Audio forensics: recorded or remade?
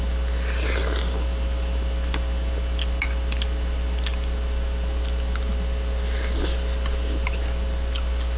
recorded